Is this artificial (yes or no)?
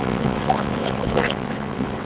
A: yes